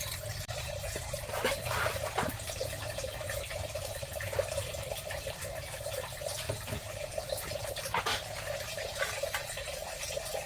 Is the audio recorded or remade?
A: remade